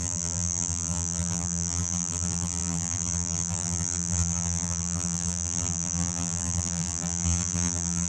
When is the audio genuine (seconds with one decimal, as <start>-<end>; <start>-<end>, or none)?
none